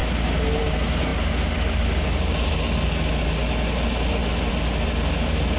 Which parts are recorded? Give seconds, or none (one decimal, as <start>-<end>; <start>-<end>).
0.0-5.6